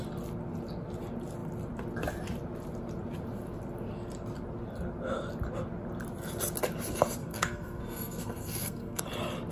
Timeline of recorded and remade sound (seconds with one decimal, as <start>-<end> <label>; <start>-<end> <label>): 0.0-7.2 recorded; 7.2-9.0 remade; 9.0-9.5 recorded

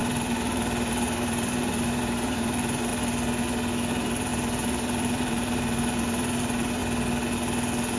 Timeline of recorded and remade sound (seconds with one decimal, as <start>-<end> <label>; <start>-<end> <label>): 0.0-2.9 remade; 2.9-3.9 recorded; 3.9-6.8 remade; 6.8-8.0 recorded

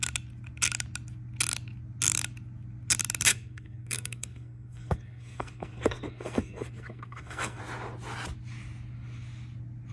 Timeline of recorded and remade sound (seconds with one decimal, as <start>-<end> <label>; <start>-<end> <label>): 0.0-3.3 recorded; 3.3-7.6 remade; 7.6-9.9 recorded

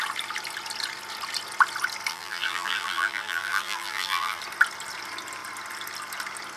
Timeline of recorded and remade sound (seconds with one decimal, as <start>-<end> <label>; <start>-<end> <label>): 0.0-2.1 recorded; 2.1-4.4 remade; 4.4-6.6 recorded

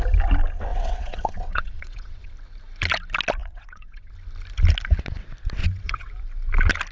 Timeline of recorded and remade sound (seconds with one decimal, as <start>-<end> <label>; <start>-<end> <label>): 0.0-0.7 recorded; 0.7-2.3 remade; 2.3-3.4 recorded; 3.4-4.1 remade; 4.1-5.6 recorded; 5.6-6.1 remade; 6.1-6.9 recorded

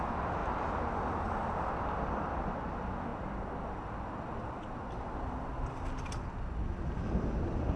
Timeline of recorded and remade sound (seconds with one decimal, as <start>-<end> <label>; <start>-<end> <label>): 0.0-7.8 recorded

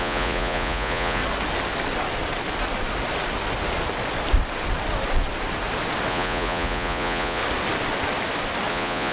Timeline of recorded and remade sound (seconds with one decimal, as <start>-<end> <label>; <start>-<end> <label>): 0.0-1.2 remade; 1.2-6.1 recorded; 6.1-7.4 remade; 7.4-8.7 recorded; 8.7-9.1 remade